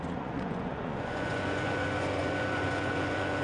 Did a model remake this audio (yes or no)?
yes